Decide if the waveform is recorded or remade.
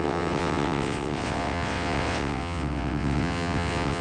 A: remade